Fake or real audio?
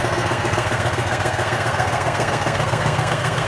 fake